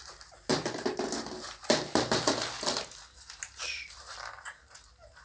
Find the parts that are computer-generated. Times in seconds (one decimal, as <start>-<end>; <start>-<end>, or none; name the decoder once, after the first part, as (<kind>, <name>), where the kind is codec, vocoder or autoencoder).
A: none